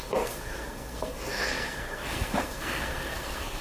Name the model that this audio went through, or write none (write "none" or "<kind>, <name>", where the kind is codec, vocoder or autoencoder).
codec, SNAC